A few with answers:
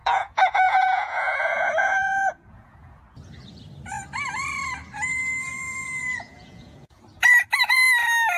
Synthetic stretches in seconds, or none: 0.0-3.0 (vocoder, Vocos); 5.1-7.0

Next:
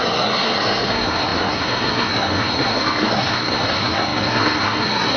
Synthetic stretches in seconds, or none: 0.0-5.2 (codec, SNAC)

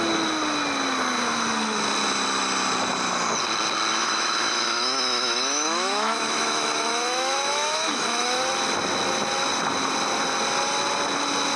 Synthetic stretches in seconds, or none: 3.9-8.4 (autoencoder, DAC-VAE)

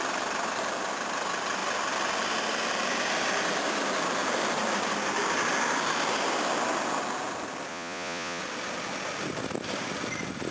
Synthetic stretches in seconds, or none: 7.7-8.4 (vocoder, Vocos)